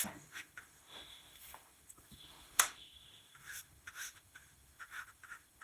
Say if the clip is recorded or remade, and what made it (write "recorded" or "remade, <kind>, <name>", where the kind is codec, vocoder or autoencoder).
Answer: remade, autoencoder, DAC-VAE